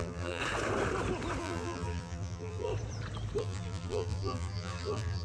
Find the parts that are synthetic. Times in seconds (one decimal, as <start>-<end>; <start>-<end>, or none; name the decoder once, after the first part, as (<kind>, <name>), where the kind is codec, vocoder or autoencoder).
0.0-0.4 (vocoder, BigVGAN v2); 1.4-2.7; 3.4-5.2

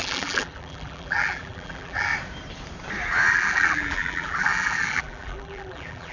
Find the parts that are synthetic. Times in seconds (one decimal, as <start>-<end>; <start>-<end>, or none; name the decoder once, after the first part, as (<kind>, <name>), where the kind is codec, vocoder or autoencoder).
0.0-2.1 (vocoder, BigVGAN v2); 3.3-6.1

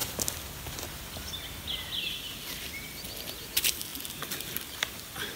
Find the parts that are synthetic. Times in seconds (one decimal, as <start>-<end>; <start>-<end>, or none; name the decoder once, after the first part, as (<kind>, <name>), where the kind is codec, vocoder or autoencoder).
3.2-5.4 (vocoder, BigVGAN v2)

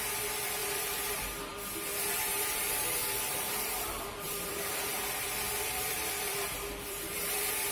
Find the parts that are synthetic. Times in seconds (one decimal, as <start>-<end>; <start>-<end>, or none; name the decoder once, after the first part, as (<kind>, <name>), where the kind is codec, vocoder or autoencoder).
0.0-1.5 (vocoder, BigVGAN v2); 2.4-7.7

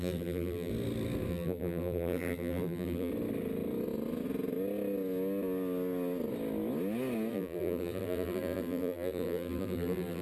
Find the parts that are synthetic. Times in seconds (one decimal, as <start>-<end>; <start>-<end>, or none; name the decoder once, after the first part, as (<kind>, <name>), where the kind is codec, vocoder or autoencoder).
0.0-0.7 (vocoder, BigVGAN v2); 1.3-3.1; 7.3-10.2

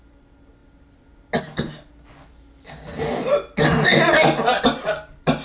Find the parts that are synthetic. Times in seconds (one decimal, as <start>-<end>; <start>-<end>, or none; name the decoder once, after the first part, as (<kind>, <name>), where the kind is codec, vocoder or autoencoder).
0.0-0.6 (vocoder, BigVGAN v2); 1.4-2.9; 4.6-5.4

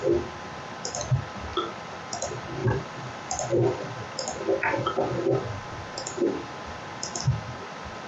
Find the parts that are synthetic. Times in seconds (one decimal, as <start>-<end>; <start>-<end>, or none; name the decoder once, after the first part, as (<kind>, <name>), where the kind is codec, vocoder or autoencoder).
1.5-2.1 (vocoder, BigVGAN v2); 2.6-4.5

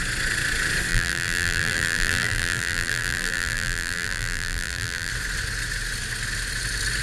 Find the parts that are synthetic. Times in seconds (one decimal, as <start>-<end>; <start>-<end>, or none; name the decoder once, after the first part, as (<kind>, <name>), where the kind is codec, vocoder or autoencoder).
0.9-5.1 (vocoder, BigVGAN v2)